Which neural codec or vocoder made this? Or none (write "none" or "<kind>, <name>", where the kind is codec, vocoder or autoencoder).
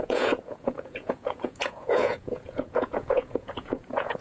vocoder, Vocos